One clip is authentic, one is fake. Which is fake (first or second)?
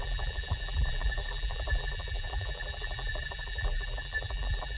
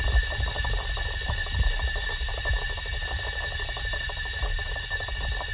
first